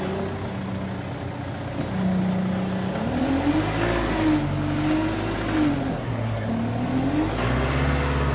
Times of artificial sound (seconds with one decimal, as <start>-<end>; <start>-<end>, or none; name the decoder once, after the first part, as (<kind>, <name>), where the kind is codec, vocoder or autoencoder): 5.9-6.5 (codec, SNAC)